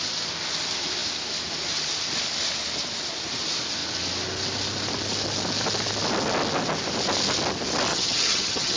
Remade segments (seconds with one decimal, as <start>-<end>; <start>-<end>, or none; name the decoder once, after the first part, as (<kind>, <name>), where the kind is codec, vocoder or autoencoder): 7.9-8.8 (vocoder, HiFi-GAN)